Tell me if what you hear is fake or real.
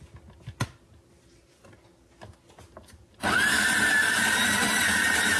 real